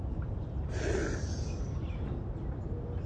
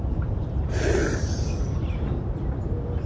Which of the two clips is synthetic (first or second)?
second